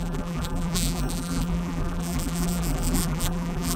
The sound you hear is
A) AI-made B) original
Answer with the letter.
A